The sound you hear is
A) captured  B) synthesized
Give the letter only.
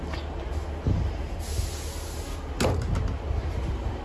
A